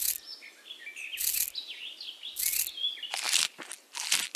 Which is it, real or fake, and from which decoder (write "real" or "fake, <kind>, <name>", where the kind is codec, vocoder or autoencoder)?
real